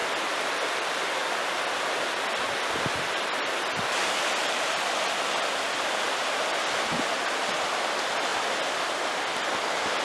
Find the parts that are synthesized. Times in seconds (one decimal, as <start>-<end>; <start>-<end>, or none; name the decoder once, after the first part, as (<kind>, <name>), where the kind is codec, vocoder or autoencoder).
none